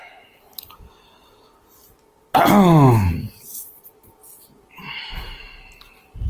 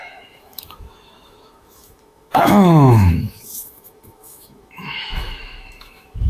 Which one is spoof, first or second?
second